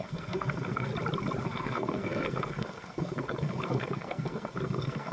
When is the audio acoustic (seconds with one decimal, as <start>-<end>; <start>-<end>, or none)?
0.9-1.4